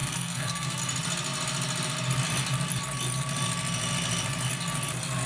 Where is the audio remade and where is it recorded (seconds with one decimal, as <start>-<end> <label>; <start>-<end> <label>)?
0.0-0.8 remade; 0.8-5.3 recorded